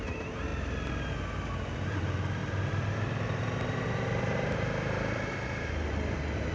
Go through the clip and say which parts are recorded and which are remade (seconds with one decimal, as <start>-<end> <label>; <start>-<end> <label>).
0.0-2.4 recorded; 2.4-6.5 remade